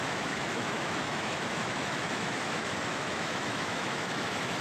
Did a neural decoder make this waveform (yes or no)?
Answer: yes